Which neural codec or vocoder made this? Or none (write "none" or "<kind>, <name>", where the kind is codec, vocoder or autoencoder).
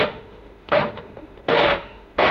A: autoencoder, DAC-VAE